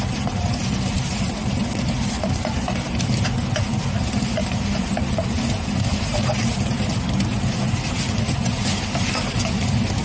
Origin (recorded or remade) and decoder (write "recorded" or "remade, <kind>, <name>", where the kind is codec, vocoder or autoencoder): recorded